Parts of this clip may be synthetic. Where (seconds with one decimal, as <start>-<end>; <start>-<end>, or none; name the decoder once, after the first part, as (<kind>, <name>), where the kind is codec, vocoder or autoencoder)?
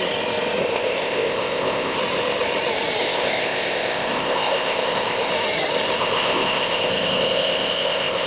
0.6-2.0 (codec, ZipCodec); 3.0-5.3; 6.0-8.3